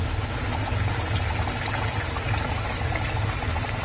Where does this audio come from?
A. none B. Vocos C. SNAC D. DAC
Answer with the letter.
A